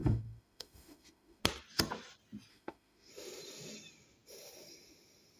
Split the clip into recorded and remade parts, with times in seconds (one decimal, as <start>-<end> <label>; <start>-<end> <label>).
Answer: 0.0-1.4 remade; 1.4-2.5 recorded; 2.5-3.1 remade; 3.1-5.4 recorded